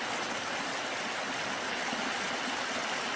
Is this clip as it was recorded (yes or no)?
yes